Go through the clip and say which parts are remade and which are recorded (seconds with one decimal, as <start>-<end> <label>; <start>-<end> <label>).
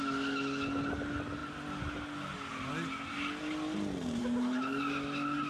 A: 0.0-5.5 recorded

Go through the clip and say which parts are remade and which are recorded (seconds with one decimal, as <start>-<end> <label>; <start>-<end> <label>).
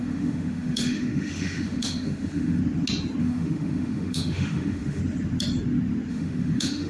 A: 0.0-2.6 remade; 2.6-3.2 recorded; 3.2-5.0 remade; 5.0-6.1 recorded; 6.1-6.9 remade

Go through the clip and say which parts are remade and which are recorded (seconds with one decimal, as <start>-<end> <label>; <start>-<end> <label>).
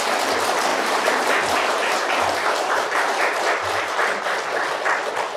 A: 0.0-0.7 recorded; 0.7-3.9 remade; 3.9-5.4 recorded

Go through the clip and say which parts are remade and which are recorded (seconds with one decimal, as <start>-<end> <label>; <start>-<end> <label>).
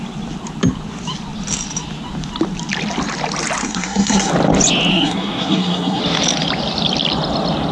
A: 0.0-3.6 recorded; 3.6-4.3 remade; 4.3-4.9 recorded; 4.9-6.0 remade; 6.0-7.7 recorded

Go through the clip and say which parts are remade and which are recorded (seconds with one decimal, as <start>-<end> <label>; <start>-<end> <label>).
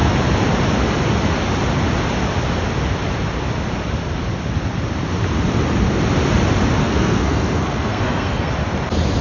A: 0.0-6.8 recorded; 6.8-8.5 remade; 8.5-9.2 recorded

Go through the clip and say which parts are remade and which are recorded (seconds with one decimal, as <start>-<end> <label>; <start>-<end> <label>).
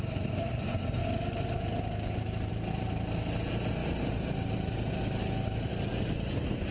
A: 0.0-6.7 recorded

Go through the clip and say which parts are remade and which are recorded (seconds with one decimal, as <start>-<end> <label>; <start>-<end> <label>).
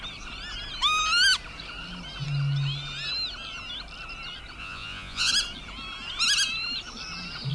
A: 0.0-4.6 recorded; 4.6-5.3 remade; 5.3-7.5 recorded